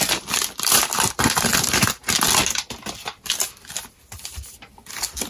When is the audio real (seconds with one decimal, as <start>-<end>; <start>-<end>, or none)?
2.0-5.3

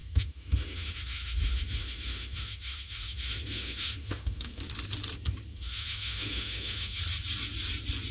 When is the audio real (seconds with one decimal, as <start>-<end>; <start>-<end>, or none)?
4.6-5.5; 7.0-8.1

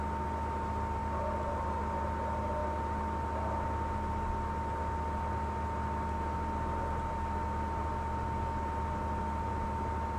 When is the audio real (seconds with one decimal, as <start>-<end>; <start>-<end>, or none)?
0.0-10.2

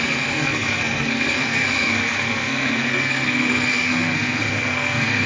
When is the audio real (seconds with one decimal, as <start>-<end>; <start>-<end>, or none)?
none